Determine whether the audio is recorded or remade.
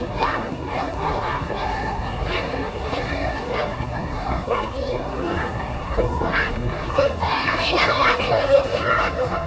remade